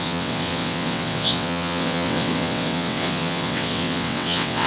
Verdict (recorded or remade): remade